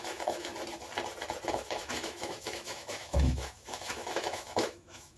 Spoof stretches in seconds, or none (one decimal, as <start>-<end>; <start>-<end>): 0.0-0.5; 1.5-5.2